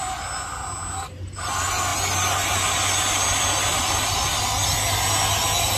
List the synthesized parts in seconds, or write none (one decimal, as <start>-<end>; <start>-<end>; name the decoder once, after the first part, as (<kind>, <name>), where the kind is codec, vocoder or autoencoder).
none